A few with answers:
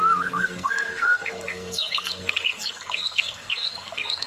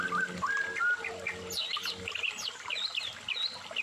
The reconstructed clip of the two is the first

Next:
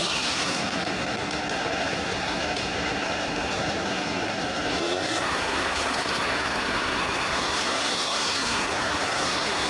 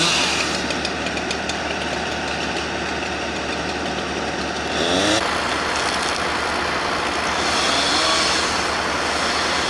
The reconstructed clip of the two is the first